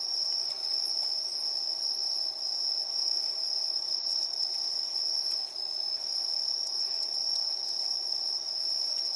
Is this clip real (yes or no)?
no